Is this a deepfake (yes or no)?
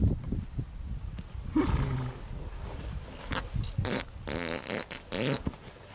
no